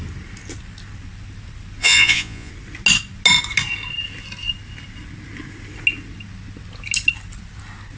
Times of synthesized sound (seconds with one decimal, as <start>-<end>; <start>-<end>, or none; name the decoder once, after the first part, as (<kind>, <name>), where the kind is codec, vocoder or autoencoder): 1.8-2.5 (vocoder, Vocos)